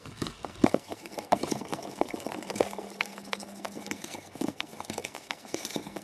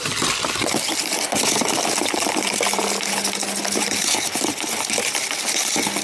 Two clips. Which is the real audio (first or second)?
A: second